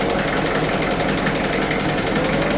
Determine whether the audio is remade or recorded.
recorded